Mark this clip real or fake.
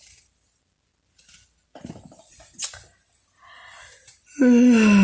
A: real